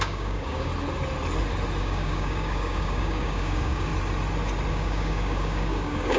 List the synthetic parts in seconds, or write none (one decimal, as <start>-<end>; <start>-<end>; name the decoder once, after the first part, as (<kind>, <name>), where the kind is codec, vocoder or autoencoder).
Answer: 0.0-0.7 (codec, DAC); 1.8-3.9; 4.7-6.2

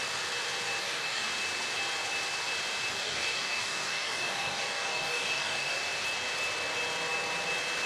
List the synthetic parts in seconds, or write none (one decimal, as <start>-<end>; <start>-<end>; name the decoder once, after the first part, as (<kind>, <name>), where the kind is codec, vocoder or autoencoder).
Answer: 0.8-1.3 (codec, DAC); 2.9-5.8

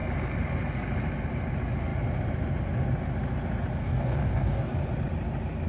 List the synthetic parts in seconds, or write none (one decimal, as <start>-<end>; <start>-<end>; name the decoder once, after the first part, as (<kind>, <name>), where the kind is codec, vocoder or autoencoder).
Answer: 3.8-4.7 (codec, DAC)

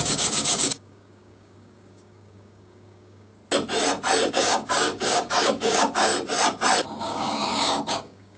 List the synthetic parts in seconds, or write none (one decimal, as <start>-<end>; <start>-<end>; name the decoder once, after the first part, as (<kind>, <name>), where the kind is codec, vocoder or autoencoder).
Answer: 0.0-3.3 (codec, DAC); 4.3-6.1; 7.0-8.4

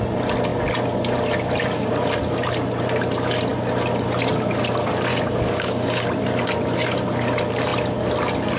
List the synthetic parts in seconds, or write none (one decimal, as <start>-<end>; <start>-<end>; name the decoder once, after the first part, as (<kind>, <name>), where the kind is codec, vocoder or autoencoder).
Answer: 5.1-6.0 (codec, DAC)

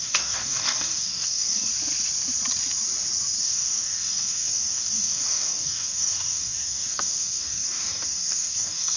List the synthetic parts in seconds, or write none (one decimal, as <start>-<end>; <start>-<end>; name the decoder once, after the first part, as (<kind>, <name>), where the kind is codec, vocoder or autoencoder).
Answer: 0.0-1.7 (codec, DAC); 3.4-9.0

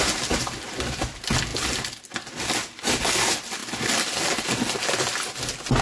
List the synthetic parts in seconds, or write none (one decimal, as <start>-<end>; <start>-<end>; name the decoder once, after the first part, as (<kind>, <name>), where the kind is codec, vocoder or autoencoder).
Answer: none